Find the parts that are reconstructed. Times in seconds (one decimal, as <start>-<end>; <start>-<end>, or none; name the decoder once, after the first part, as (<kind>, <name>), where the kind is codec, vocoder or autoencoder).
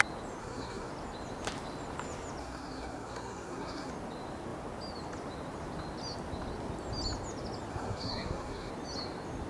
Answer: 0.4-0.9 (codec, SNAC); 2.4-3.9; 7.7-8.7